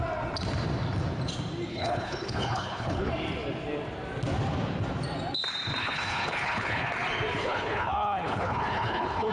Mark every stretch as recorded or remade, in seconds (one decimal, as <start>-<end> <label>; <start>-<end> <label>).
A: 0.0-1.7 recorded; 1.7-3.1 remade; 3.1-5.8 recorded; 5.8-6.9 remade; 6.9-7.4 recorded; 7.4-9.3 remade

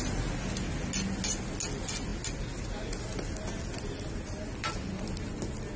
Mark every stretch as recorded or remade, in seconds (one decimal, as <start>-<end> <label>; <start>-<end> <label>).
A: 0.0-5.8 recorded

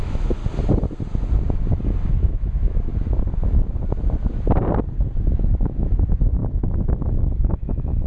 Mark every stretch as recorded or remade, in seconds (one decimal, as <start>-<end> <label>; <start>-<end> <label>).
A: 0.0-0.4 remade; 0.4-2.1 recorded; 2.1-2.9 remade; 2.9-5.2 recorded; 5.2-6.4 remade; 6.4-7.2 recorded; 7.2-8.1 remade

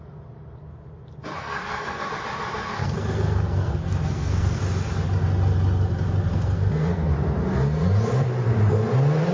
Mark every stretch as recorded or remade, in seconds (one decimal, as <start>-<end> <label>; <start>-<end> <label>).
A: 0.0-1.4 recorded; 1.4-2.1 remade; 2.1-2.7 recorded; 2.7-4.6 remade; 4.6-6.3 recorded; 6.3-7.1 remade; 7.1-9.3 recorded

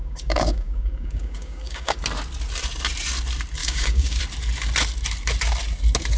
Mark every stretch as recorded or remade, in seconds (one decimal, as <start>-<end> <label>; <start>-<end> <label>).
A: 0.0-2.0 remade; 2.0-3.6 recorded; 3.6-4.2 remade; 4.2-6.2 recorded

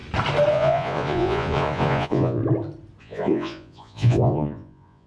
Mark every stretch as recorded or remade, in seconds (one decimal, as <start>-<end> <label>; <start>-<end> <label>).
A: 0.0-0.5 recorded; 0.5-2.4 remade; 2.4-3.0 recorded; 3.0-5.1 remade

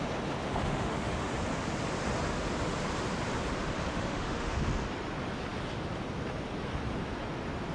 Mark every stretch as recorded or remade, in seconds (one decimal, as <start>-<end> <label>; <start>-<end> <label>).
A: 0.0-0.6 recorded; 0.6-1.3 remade; 1.3-3.9 recorded; 3.9-4.6 remade; 4.6-7.7 recorded

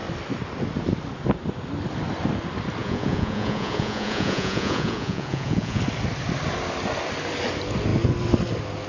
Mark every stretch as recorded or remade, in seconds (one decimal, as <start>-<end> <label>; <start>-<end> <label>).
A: 0.0-2.8 recorded; 2.8-5.8 remade; 5.8-8.9 recorded